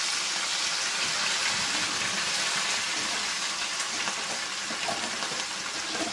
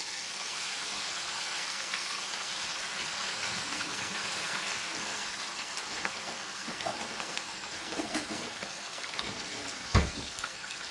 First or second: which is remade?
second